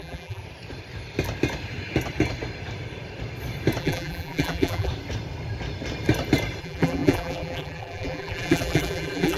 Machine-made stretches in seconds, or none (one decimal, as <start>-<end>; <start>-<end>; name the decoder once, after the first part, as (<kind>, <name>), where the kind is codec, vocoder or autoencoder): 0.0-0.4 (vocoder, BigVGAN v2); 3.8-4.9; 6.6-9.4